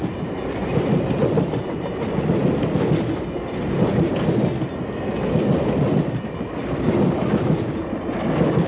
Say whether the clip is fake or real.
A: real